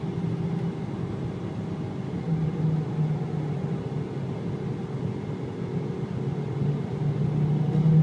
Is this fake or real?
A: real